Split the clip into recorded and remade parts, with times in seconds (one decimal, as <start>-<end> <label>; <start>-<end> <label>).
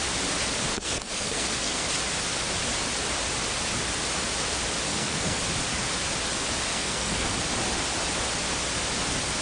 0.0-0.7 recorded; 0.7-1.9 remade; 1.9-4.9 recorded; 4.9-5.4 remade; 5.4-6.7 recorded; 6.7-7.4 remade; 7.4-9.4 recorded